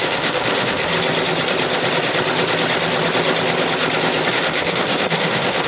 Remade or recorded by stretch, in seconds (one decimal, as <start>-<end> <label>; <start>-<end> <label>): 0.0-0.9 remade; 0.9-4.3 recorded; 4.3-5.7 remade